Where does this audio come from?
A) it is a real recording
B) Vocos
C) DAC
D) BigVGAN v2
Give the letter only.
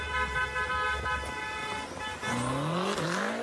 A